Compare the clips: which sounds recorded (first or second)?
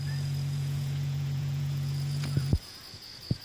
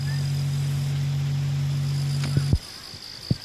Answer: second